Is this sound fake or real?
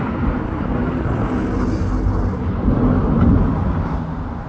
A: real